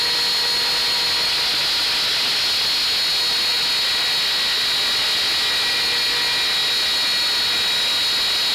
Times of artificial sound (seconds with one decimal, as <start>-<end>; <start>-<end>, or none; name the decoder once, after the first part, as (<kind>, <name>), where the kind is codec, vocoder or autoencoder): none